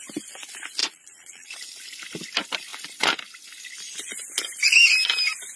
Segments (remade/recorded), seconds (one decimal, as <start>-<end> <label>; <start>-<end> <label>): 0.0-0.8 recorded; 0.8-1.6 remade; 1.6-5.6 recorded